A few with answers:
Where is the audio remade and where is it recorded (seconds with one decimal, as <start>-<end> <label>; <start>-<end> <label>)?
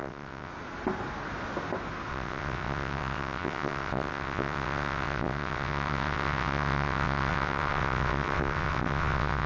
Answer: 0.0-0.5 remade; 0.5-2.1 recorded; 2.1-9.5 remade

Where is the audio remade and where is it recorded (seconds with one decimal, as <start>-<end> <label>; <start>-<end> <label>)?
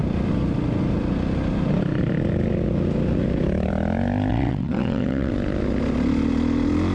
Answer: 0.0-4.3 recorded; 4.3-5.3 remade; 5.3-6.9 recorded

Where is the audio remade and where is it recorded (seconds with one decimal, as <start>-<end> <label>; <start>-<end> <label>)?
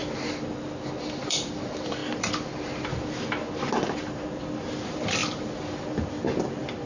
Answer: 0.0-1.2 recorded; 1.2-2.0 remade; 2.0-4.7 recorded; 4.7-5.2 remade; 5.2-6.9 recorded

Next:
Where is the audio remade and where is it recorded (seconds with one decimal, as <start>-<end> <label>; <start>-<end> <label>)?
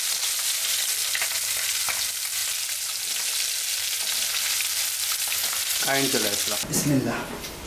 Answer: 0.0-7.7 recorded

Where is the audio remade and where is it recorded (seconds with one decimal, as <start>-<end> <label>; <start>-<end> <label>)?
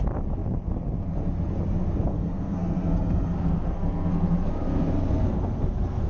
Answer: 0.0-2.1 recorded; 2.1-6.1 remade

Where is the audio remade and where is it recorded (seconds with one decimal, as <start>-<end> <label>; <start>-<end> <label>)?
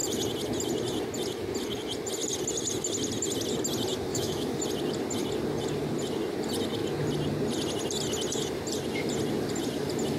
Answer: 0.0-4.1 recorded; 4.1-4.6 remade; 4.6-10.2 recorded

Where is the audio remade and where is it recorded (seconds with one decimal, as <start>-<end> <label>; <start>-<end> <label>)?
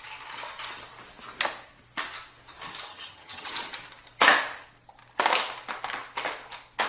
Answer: 0.0-2.9 recorded; 2.9-3.5 remade; 3.5-6.9 recorded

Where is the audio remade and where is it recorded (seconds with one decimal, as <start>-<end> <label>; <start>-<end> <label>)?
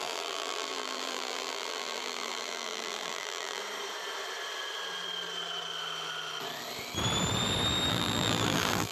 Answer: 0.0-3.6 remade; 3.6-7.9 recorded; 7.9-8.9 remade